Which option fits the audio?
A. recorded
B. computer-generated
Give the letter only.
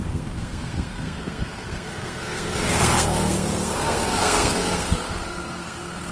B